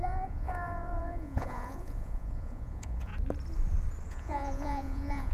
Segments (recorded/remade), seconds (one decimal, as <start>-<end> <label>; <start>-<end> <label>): 0.0-3.1 remade; 3.1-4.1 recorded; 4.1-5.3 remade